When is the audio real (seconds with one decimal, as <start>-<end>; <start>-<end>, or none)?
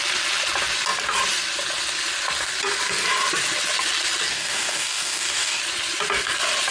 0.0-4.3; 5.6-6.7